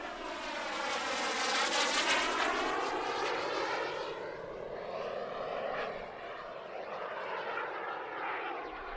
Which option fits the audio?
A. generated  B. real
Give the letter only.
B